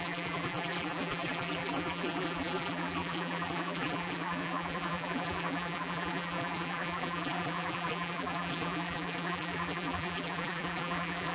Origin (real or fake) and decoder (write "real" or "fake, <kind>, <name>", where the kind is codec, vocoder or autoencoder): fake, vocoder, BigVGAN v2